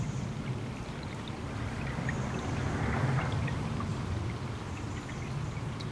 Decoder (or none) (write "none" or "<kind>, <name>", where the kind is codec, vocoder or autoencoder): none